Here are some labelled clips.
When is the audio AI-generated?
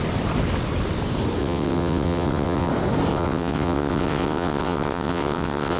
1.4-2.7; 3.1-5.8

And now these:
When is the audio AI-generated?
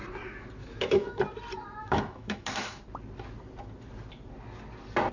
0.6-1.2; 1.8-2.8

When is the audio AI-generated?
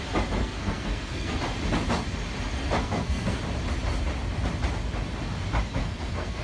0.4-1.4; 2.8-3.4; 5.8-6.4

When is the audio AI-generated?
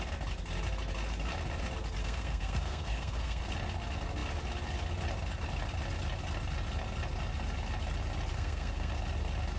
2.0-3.4; 8.3-8.9